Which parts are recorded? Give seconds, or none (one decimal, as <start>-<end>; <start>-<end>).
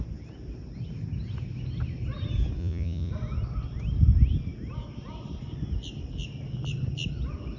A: 0.0-2.6; 3.1-7.6